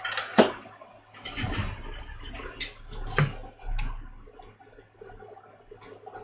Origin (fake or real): real